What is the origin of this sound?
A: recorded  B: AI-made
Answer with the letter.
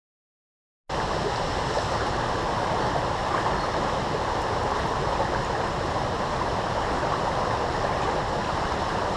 A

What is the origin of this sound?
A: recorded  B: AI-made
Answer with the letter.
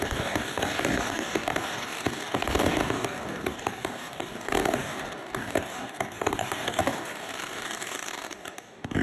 B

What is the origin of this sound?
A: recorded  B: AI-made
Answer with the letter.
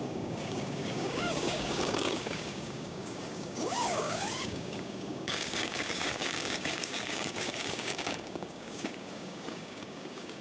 B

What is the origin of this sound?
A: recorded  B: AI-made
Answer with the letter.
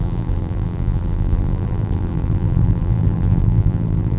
B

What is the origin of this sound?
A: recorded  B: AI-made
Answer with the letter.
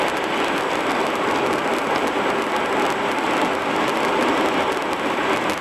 A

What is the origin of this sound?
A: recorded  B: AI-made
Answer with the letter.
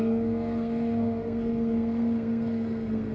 B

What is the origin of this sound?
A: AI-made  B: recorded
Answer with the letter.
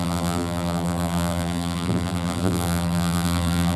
A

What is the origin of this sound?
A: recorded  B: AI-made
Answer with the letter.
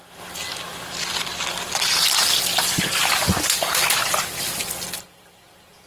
A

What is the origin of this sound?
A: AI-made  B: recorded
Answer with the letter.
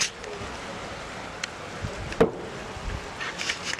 B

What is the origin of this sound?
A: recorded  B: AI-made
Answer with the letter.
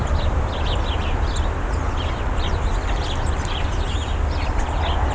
A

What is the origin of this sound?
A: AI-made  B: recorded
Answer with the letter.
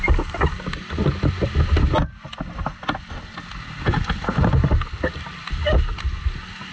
B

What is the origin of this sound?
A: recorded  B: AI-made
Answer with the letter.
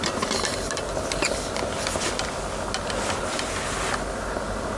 A